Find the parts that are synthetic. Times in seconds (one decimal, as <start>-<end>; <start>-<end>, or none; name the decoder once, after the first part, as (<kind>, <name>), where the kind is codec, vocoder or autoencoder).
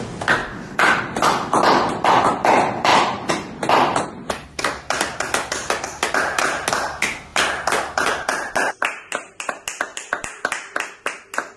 0.4-1.0 (vocoder, BigVGAN v2); 2.9-6.4; 7.3-8.5; 9.9-10.9